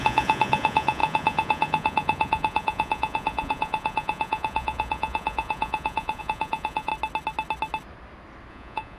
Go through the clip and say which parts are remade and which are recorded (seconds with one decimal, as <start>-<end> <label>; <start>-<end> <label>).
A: 0.0-6.9 remade; 6.9-8.5 recorded; 8.5-9.0 remade